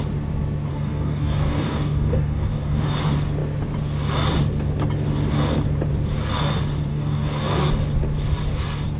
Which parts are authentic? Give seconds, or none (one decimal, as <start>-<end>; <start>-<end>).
0.0-0.7; 3.0-6.9; 7.7-9.0